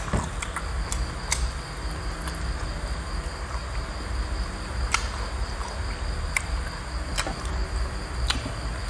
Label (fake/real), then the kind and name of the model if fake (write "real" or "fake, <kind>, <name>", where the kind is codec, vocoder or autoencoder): real